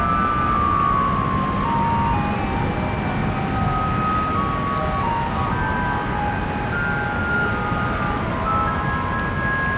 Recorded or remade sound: recorded